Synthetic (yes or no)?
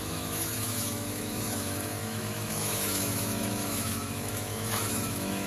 yes